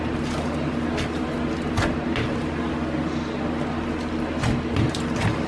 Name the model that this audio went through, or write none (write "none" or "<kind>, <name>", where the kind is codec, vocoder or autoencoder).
none